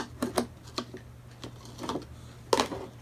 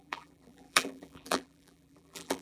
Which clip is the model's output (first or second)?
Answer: second